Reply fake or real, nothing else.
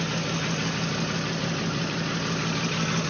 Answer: real